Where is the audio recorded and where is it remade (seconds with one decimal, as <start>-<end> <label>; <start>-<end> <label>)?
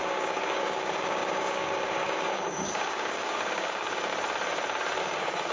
0.0-4.1 remade; 4.1-5.0 recorded; 5.0-5.5 remade